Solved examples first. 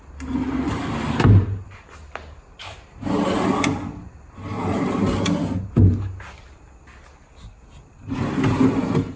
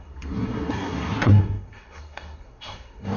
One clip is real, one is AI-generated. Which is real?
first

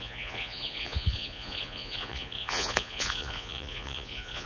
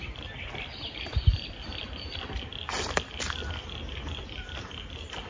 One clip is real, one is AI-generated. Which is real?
second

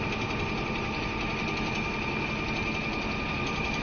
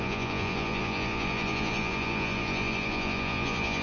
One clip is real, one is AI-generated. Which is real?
first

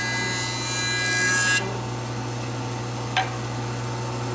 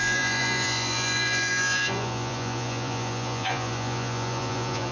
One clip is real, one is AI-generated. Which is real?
first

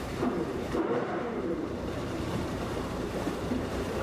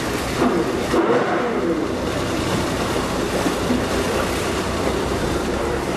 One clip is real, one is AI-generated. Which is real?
second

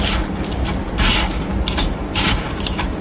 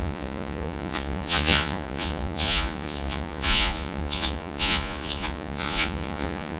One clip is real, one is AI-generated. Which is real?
first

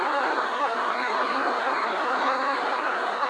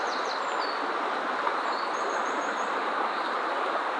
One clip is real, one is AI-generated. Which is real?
second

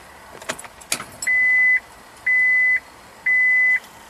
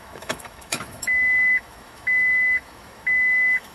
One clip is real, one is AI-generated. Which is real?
first